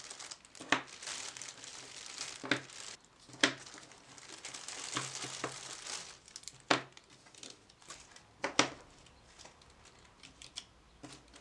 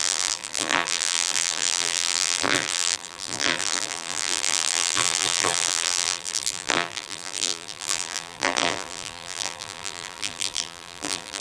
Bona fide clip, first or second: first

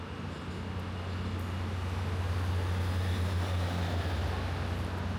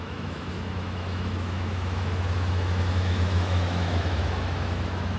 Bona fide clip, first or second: first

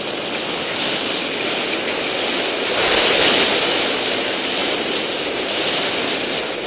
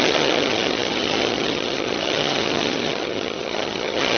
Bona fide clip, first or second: first